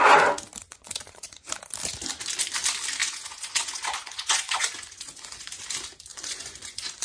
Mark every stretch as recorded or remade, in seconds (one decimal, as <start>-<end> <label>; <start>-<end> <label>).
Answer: 0.0-0.6 recorded; 0.6-1.5 remade; 1.5-3.0 recorded; 3.0-5.6 remade; 5.6-6.1 recorded; 6.1-7.0 remade